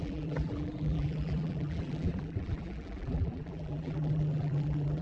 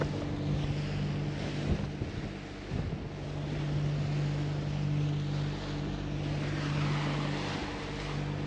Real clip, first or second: second